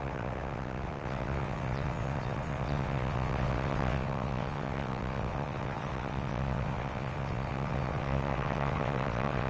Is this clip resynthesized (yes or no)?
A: yes